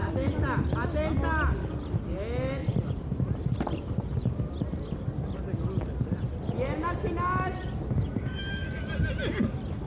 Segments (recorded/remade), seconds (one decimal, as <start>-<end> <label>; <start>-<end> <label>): 0.0-2.6 recorded; 2.6-7.8 remade; 7.8-9.9 recorded